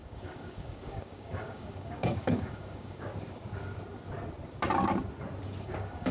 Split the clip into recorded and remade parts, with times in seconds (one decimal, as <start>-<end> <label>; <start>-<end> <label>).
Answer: 0.0-3.1 remade; 3.1-5.6 recorded; 5.6-6.1 remade